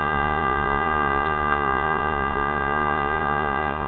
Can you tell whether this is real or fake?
fake